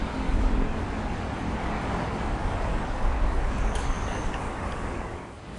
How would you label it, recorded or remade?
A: remade